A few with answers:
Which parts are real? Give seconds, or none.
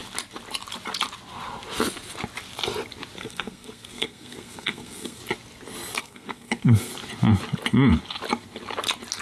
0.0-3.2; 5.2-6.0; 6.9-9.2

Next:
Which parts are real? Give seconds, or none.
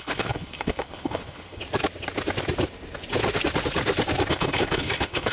1.6-4.3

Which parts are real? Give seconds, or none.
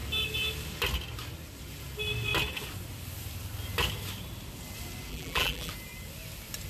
0.0-5.1; 5.7-6.7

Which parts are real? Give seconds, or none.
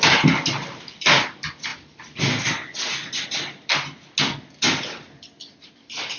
0.0-6.2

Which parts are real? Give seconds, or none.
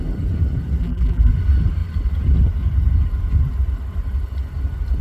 0.0-0.8; 1.3-5.0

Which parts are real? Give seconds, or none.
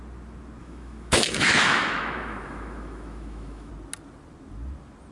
0.0-0.6; 3.7-5.1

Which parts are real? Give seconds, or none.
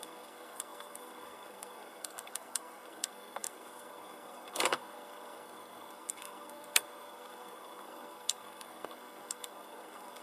none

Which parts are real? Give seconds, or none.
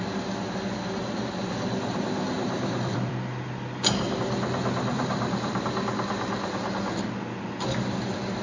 0.0-2.4; 3.1-4.9; 5.6-8.4